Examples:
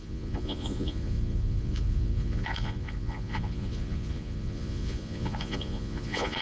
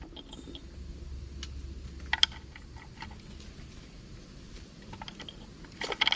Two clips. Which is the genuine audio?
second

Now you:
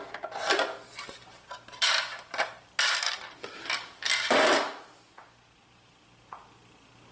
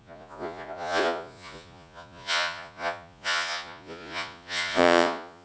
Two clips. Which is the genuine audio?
first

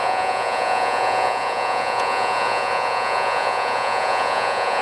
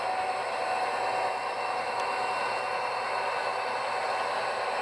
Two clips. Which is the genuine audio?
second